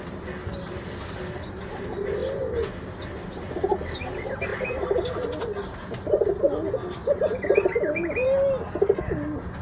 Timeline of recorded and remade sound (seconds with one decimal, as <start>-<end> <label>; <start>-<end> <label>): 0.0-9.6 recorded